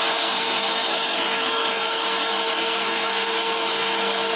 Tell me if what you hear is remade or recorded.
remade